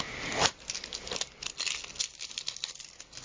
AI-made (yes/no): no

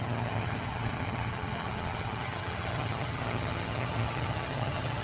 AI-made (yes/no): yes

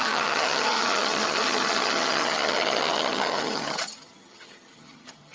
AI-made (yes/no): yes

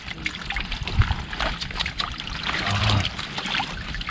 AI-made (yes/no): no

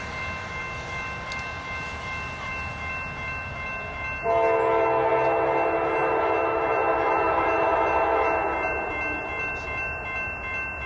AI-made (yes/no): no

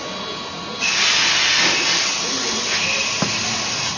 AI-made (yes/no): no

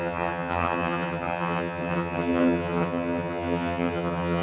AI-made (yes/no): yes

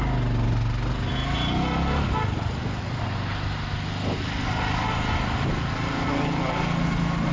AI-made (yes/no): no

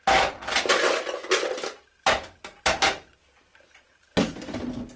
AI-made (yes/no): no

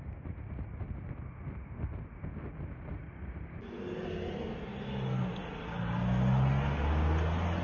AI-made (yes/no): no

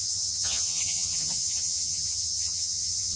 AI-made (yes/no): yes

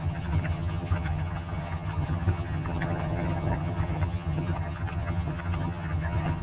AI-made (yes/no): yes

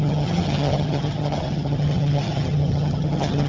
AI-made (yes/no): yes